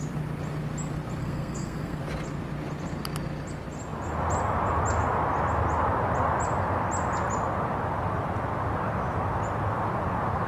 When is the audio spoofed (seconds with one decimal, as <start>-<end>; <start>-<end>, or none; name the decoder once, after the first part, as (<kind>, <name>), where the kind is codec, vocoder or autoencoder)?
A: 1.2-2.0 (codec, SNAC)